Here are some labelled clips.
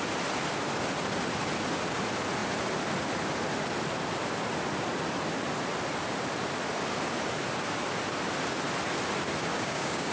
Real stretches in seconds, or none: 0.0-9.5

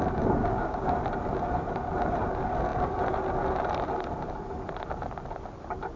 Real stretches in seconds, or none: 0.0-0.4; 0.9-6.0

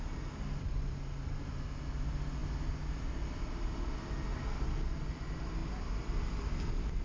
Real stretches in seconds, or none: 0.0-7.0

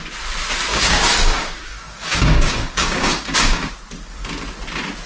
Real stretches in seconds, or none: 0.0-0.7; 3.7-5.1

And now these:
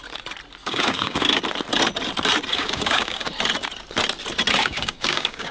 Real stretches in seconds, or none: 0.0-0.6; 1.4-2.5; 3.3-4.6

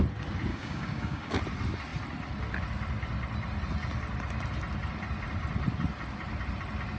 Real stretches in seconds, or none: 0.0-0.5; 1.4-7.0